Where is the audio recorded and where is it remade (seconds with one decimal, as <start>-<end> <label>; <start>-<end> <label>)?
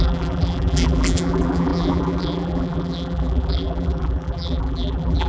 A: 0.0-5.3 remade